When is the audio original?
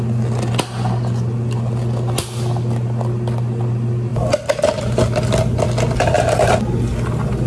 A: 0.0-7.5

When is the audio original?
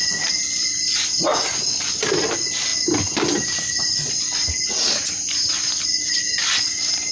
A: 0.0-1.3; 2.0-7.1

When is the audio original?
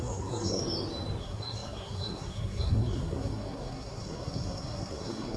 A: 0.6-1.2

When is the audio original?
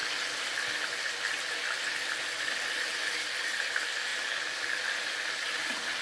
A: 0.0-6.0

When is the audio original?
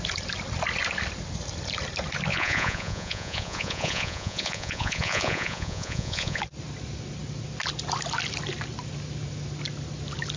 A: 0.0-2.3; 6.4-10.4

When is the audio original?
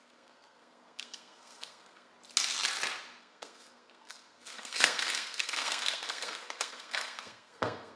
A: 2.1-3.2